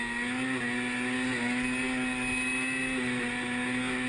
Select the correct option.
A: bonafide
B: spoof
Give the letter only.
A